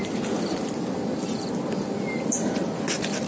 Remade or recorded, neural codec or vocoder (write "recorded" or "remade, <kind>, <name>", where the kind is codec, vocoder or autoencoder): recorded